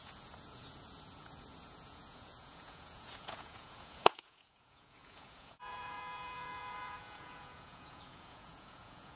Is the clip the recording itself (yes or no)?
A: no